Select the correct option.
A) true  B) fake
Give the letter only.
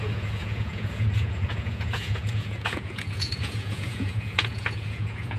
B